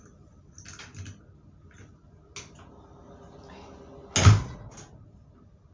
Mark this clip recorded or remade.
recorded